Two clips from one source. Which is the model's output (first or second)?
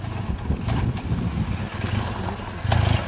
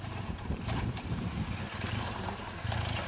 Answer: second